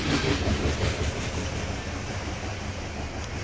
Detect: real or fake real